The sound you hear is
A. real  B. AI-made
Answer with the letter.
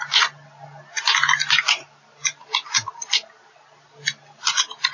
A